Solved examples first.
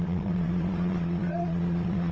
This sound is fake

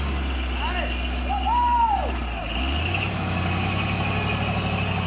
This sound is real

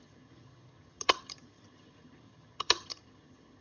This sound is fake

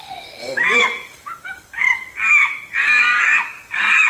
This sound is fake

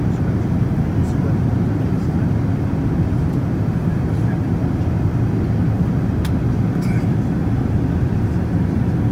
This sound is real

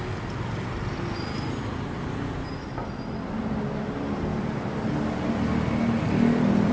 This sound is real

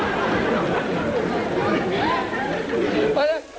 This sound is real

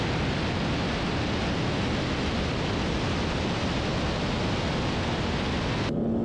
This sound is real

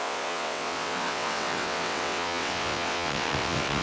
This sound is fake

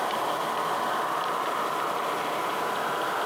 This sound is real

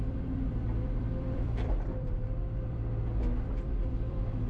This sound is fake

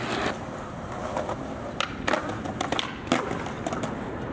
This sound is real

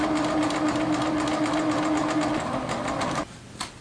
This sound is real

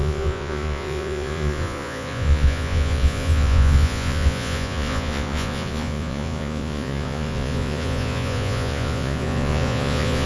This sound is fake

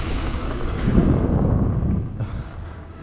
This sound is fake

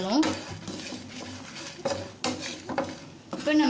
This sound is real